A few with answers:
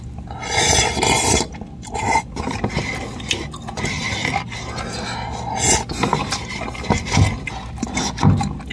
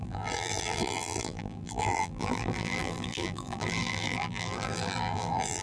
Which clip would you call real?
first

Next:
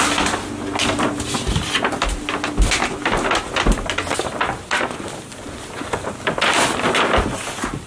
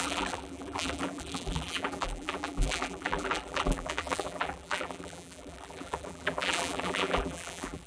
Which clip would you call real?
first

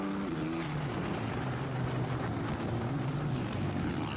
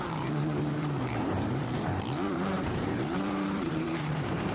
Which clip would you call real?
first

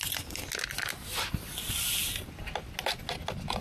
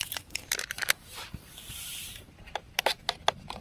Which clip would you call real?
first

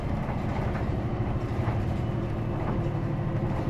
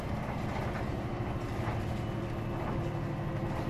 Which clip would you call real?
second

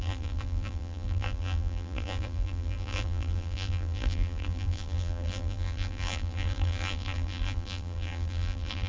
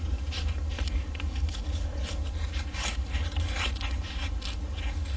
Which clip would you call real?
second